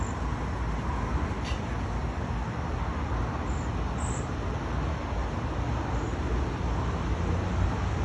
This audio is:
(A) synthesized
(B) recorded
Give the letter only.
B